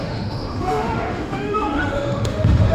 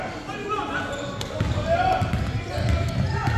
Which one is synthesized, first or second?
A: first